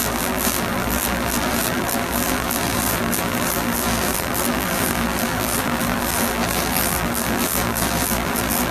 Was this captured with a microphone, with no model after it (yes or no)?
no